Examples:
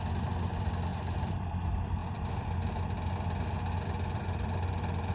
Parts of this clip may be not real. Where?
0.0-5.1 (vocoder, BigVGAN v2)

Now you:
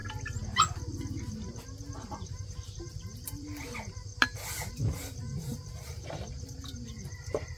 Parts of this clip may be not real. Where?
2.0-4.1 (vocoder, BigVGAN v2); 4.7-7.6

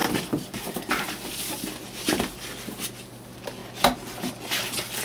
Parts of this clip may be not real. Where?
0.0-1.5 (vocoder, BigVGAN v2)

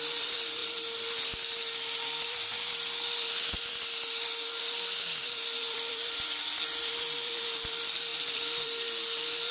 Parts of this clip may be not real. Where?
0.0-9.5 (vocoder, BigVGAN v2)

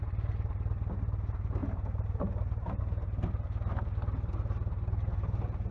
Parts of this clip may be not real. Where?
1.6-2.8 (vocoder, BigVGAN v2)

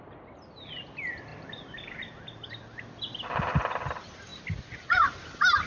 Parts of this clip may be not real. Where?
1.3-3.5 (vocoder, BigVGAN v2); 4.3-5.2

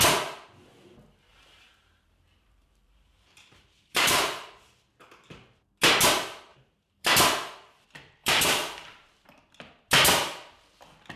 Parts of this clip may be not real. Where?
1.3-4.7 (vocoder, BigVGAN v2); 6.5-7.1; 8.2-9.1

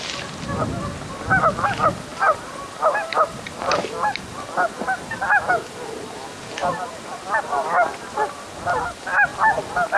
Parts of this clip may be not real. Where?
2.1-5.5 (vocoder, BigVGAN v2)